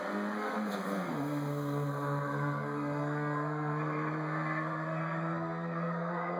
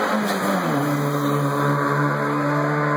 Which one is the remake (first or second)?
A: first